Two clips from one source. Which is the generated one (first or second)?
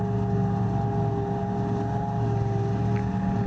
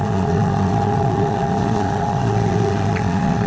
second